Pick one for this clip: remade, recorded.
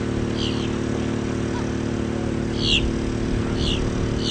recorded